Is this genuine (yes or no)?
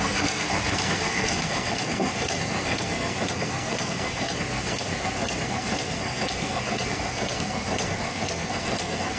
no